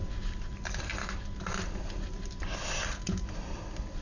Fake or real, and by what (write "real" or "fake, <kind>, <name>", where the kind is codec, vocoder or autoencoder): fake, vocoder, BigVGAN v2